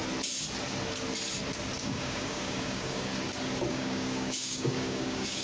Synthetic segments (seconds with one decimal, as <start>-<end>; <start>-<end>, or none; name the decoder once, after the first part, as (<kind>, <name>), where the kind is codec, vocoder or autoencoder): 1.8-3.1 (codec, DAC); 3.7-5.4